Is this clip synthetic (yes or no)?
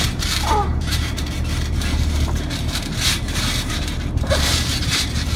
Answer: yes